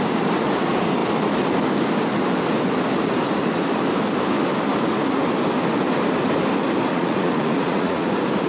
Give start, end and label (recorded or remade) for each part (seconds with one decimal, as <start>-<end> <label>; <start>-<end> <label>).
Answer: 0.0-6.9 recorded; 6.9-8.1 remade; 8.1-8.5 recorded